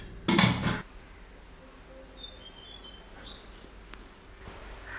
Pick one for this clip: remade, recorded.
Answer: recorded